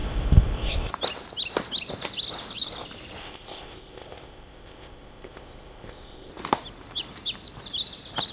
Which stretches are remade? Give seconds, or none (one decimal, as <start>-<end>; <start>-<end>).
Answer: 0.0-0.9; 3.2-6.3